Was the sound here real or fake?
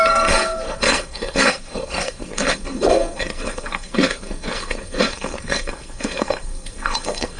fake